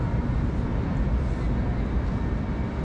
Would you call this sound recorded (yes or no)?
yes